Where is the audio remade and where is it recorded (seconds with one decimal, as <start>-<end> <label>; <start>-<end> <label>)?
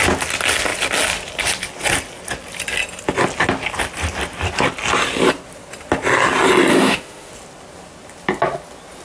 0.0-6.7 recorded; 6.7-7.3 remade; 7.3-9.0 recorded